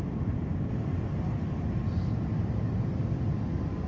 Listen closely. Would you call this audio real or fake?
real